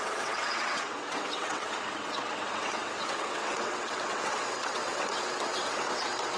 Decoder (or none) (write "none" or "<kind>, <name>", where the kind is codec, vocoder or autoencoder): vocoder, WaveNeXt